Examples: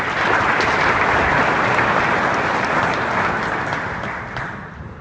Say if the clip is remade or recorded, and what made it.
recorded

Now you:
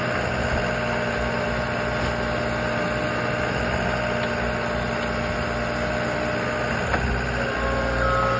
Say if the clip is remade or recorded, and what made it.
recorded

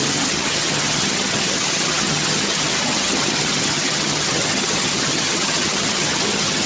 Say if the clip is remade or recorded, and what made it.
remade, vocoder, HiFi-GAN